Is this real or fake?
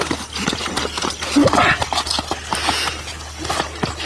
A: real